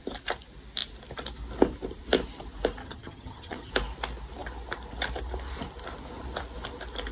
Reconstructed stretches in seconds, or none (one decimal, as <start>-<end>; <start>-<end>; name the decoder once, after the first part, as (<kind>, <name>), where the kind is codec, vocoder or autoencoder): 2.8-3.7 (vocoder, HiFi-GAN)